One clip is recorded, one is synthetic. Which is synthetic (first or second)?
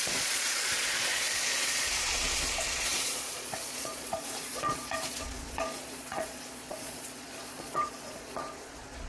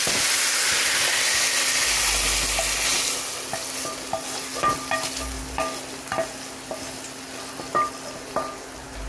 first